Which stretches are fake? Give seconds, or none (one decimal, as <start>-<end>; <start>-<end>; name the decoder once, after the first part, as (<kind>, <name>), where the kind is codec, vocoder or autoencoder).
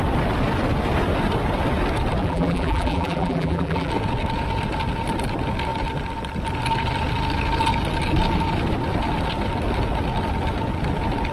2.2-3.9 (vocoder, BigVGAN v2)